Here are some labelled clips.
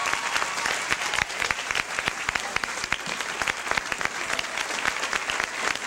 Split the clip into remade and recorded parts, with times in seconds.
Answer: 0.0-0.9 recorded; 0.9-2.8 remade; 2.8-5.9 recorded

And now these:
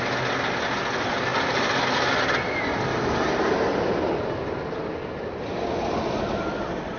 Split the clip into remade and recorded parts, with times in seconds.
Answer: 0.0-7.0 recorded

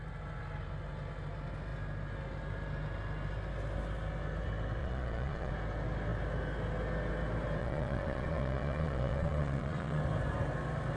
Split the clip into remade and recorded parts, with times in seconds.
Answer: 0.0-4.8 recorded; 4.8-5.5 remade; 5.5-7.6 recorded; 7.6-10.0 remade; 10.0-11.0 recorded

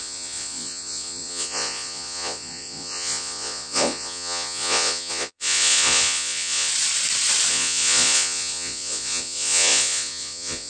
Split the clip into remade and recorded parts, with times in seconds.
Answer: 0.0-6.7 remade; 6.7-7.5 recorded; 7.5-10.7 remade

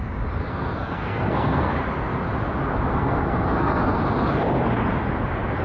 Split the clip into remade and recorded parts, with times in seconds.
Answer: 0.0-0.4 recorded; 0.4-1.7 remade; 1.7-2.9 recorded; 2.9-4.0 remade; 4.0-5.6 recorded

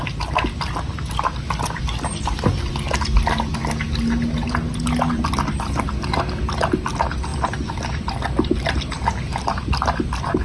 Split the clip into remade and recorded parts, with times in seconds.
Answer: 0.0-10.4 recorded

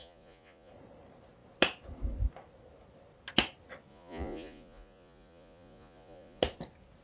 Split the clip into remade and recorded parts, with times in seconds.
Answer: 0.0-0.7 remade; 0.7-3.9 recorded; 3.9-6.4 remade; 6.4-7.0 recorded

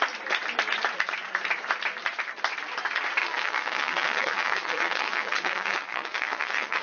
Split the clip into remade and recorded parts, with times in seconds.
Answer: 0.0-3.2 recorded; 3.2-6.8 remade